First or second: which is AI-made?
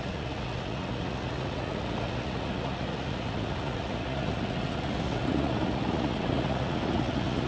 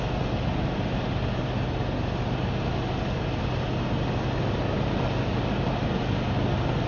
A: first